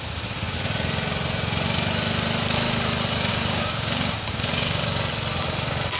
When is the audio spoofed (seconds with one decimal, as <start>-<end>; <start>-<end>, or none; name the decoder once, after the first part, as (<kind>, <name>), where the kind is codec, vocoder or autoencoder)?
3.3-4.4 (codec, DAC)